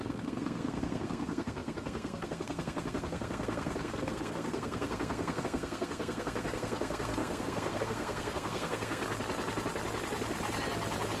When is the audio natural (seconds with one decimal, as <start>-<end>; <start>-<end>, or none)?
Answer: 9.0-11.2